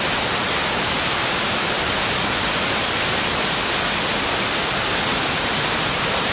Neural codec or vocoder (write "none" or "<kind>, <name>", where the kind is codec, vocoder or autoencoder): none